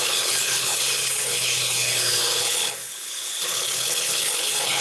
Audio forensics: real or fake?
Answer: fake